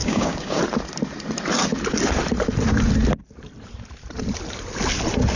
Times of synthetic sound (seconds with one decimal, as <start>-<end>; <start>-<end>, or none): 0.0-0.6

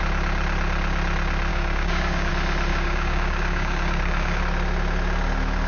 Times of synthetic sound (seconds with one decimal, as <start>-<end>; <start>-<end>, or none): 1.5-2.3; 2.7-4.4

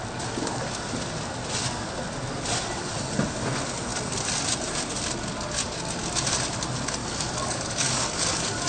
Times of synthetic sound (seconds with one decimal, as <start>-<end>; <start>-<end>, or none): 7.0-8.7